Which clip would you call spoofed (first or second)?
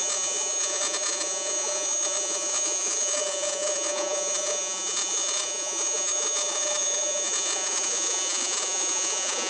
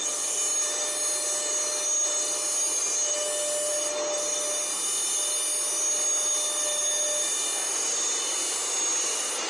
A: first